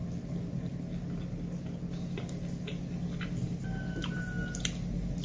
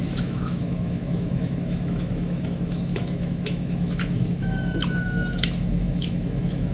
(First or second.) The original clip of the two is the first